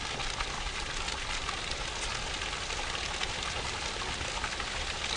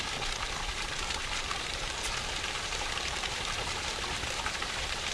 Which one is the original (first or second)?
first